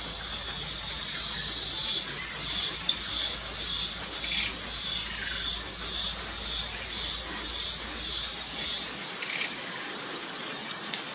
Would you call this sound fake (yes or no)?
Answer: no